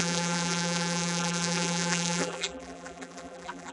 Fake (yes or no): yes